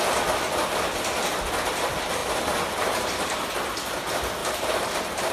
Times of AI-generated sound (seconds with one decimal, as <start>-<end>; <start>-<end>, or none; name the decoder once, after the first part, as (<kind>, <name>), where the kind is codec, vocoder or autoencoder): 2.2-3.4 (vocoder, BigVGAN v2); 4.4-5.3